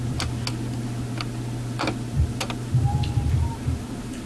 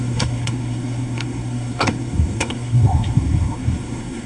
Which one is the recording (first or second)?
first